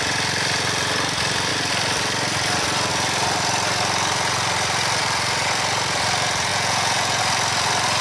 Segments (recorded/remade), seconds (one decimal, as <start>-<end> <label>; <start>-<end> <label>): 0.0-6.5 recorded; 6.5-7.2 remade; 7.2-8.0 recorded